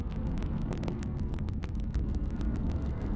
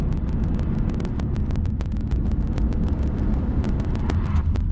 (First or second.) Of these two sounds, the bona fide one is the second